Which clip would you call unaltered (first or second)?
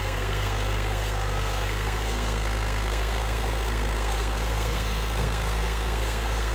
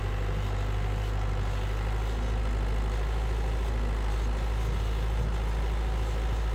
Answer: second